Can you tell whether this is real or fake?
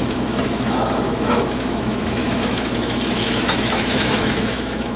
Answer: fake